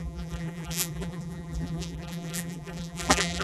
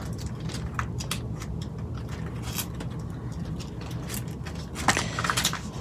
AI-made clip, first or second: first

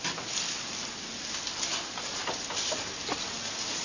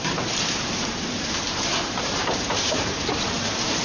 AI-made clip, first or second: second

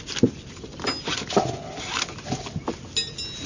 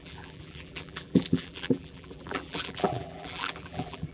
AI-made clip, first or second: second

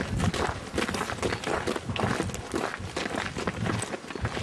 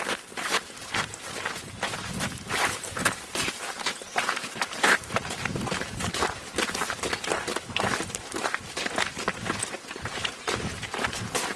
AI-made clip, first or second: second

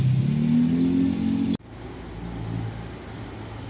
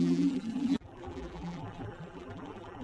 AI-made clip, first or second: second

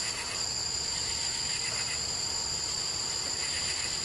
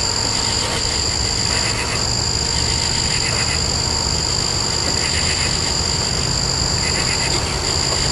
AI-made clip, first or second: first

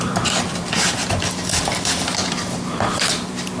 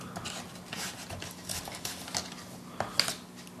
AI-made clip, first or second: first